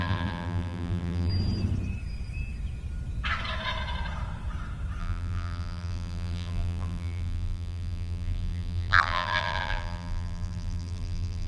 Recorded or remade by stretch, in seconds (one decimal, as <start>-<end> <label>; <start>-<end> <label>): 0.0-1.3 remade; 1.3-5.0 recorded; 5.0-11.5 remade